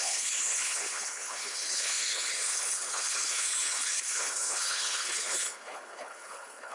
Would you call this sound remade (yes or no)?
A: yes